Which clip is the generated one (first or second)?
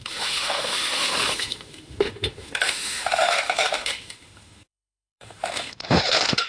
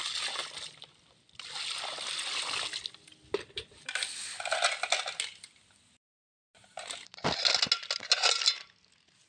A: first